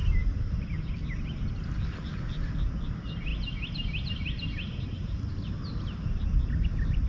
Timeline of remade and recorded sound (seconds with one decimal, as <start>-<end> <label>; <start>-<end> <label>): 0.0-0.9 remade; 0.9-3.3 recorded; 3.3-5.3 remade; 5.3-7.1 recorded